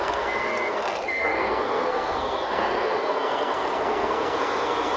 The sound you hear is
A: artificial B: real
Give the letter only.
A